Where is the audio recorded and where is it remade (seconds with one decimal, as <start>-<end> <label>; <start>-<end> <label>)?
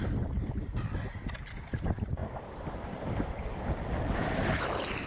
0.0-5.1 recorded